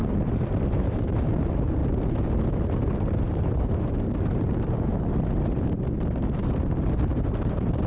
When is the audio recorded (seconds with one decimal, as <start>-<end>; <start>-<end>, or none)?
1.8-2.9; 4.9-6.8